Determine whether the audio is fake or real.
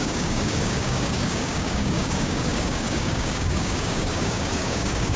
fake